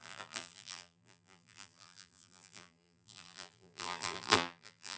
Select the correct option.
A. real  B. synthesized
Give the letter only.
B